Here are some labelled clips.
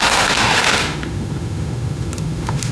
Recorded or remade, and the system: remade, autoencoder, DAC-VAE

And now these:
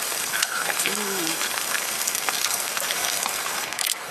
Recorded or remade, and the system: remade, codec, SNAC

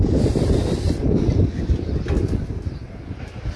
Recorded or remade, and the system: recorded